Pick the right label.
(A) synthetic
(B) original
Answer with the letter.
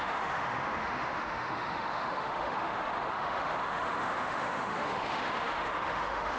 A